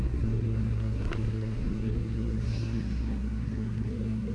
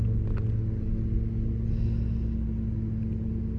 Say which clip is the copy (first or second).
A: first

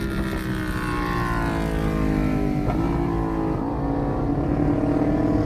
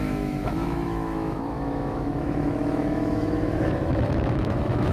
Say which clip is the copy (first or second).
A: second